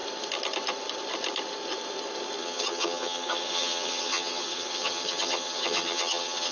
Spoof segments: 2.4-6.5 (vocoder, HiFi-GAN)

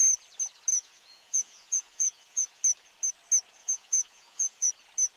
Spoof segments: 0.7-2.6 (vocoder, Vocos); 3.6-4.7

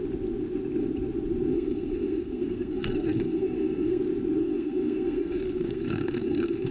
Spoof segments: 1.5-4.0 (codec, SNAC); 4.4-6.7

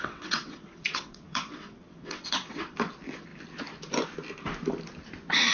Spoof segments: 0.0-2.6 (vocoder, WaveNeXt)